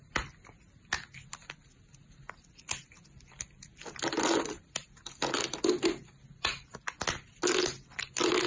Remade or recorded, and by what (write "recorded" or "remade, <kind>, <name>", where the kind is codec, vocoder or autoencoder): recorded